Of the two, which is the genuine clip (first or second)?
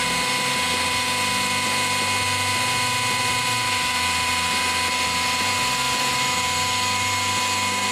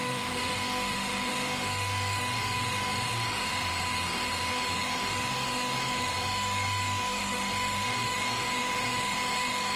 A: first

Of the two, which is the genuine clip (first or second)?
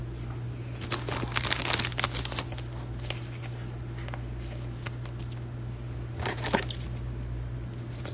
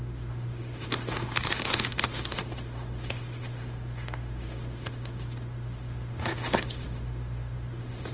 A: first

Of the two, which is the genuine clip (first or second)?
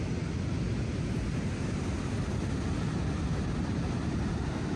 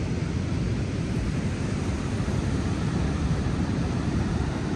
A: first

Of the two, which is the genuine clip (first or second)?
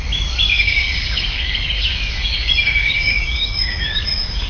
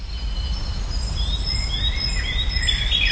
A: second